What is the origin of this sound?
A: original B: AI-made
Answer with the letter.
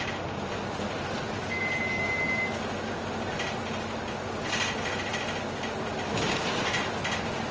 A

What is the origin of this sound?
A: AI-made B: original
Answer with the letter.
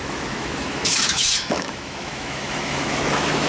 A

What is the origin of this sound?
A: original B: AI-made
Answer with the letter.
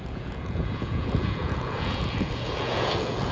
B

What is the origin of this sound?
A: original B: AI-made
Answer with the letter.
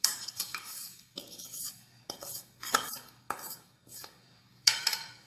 B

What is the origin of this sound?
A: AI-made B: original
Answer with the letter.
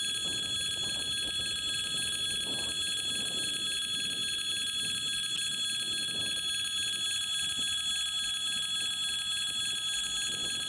B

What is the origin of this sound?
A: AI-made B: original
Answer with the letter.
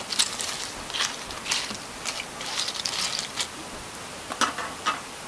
B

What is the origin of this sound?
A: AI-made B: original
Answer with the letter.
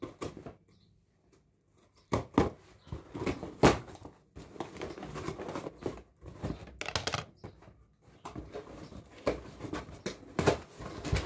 B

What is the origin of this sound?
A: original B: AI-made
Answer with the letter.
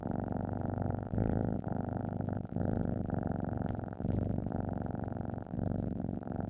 B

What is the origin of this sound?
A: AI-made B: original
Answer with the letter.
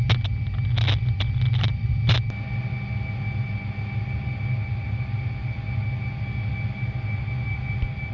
B